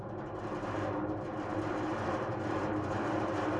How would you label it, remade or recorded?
remade